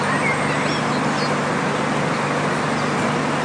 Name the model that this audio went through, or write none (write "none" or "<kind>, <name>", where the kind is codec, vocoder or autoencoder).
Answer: none